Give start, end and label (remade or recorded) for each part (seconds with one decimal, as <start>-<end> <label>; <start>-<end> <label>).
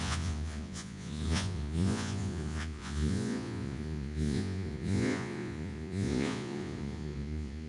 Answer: 0.0-7.7 remade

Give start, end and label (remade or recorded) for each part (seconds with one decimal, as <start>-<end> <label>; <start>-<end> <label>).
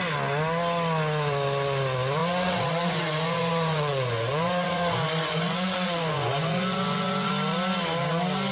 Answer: 0.0-2.2 recorded; 2.2-7.3 remade; 7.3-8.5 recorded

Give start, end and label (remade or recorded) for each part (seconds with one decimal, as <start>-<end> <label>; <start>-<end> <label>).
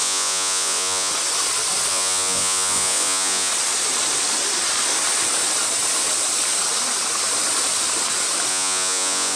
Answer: 0.0-1.1 remade; 1.1-1.9 recorded; 1.9-3.5 remade; 3.5-8.5 recorded; 8.5-9.4 remade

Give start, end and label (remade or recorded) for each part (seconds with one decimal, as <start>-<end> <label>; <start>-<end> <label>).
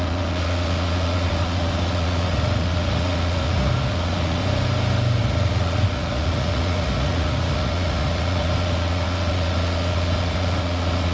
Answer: 0.0-4.4 remade; 4.4-5.2 recorded; 5.2-11.1 remade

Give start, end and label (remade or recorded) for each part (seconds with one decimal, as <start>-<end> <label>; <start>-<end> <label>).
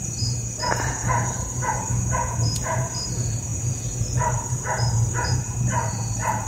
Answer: 0.0-6.5 remade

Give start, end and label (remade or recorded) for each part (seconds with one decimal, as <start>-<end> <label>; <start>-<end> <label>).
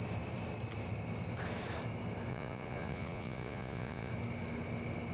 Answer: 0.0-2.3 recorded; 2.3-4.1 remade; 4.1-5.1 recorded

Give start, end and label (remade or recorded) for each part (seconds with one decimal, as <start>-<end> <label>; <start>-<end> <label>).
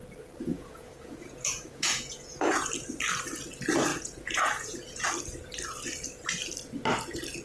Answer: 0.0-0.5 recorded; 0.5-2.7 remade; 2.7-3.9 recorded; 3.9-5.1 remade; 5.1-7.4 recorded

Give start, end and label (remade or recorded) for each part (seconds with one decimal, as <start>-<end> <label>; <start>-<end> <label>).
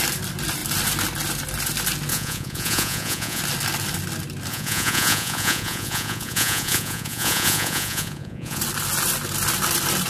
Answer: 0.0-2.1 recorded; 2.1-3.4 remade; 3.4-4.5 recorded; 4.5-8.6 remade; 8.6-10.1 recorded